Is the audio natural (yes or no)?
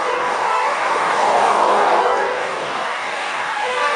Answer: no